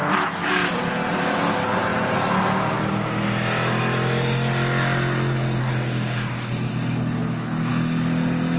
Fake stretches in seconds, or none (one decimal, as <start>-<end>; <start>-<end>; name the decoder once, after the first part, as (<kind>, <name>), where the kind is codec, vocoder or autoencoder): 5.6-6.5 (codec, DAC)